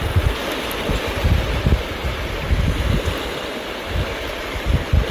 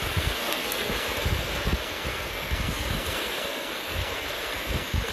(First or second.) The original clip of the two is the first